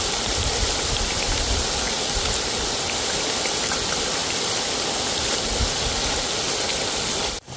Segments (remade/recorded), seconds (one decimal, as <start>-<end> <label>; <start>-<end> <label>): 0.0-4.2 remade; 4.2-6.7 recorded; 6.7-7.6 remade